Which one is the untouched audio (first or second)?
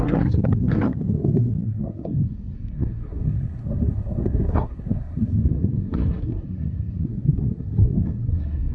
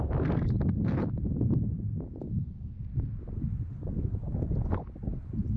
second